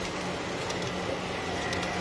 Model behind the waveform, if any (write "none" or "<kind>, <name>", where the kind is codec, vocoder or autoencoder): none